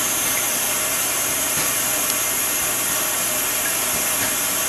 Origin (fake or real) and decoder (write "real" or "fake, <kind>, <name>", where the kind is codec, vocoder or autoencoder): real